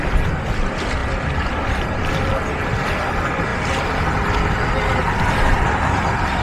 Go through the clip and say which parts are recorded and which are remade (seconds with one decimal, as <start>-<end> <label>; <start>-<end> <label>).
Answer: 0.0-1.0 recorded; 1.0-2.3 remade; 2.3-6.4 recorded